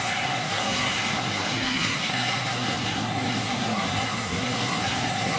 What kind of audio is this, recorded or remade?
remade